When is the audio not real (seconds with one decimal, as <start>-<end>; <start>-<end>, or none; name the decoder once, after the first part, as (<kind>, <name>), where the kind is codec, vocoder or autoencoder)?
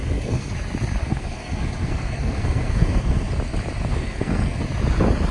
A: 0.0-0.5 (codec, SNAC); 1.0-3.3; 3.9-4.6